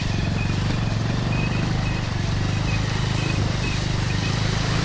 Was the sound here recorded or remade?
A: recorded